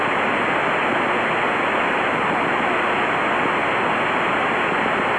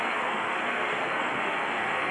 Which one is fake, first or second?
second